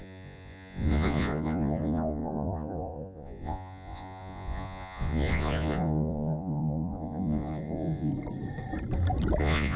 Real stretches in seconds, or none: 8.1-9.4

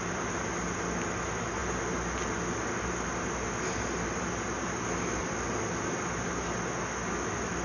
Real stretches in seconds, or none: 0.0-7.6

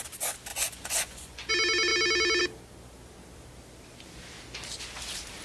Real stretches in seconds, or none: 0.0-0.5; 1.5-5.4

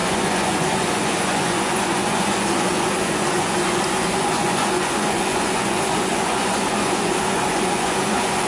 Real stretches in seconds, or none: none

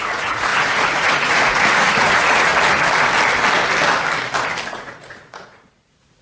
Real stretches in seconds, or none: 2.5-4.7

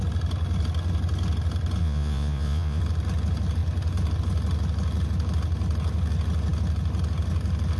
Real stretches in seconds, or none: 0.0-1.8; 2.8-7.8

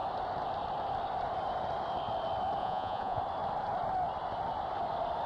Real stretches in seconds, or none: 0.0-2.6; 3.2-5.3